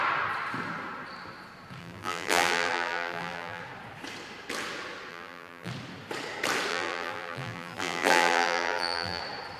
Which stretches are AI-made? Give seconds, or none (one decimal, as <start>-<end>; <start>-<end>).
1.8-3.6; 5.1-5.7; 6.7-9.2